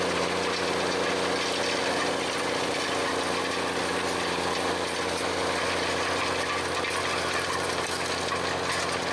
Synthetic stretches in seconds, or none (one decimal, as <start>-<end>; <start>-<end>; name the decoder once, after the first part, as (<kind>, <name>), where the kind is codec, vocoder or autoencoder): none